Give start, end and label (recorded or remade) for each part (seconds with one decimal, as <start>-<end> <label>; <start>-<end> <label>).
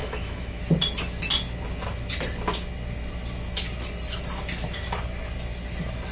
0.0-0.6 remade; 0.6-6.1 recorded